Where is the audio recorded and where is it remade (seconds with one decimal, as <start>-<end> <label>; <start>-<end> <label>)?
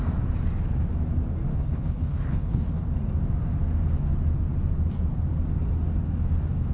0.0-1.5 recorded; 1.5-2.8 remade; 2.8-6.7 recorded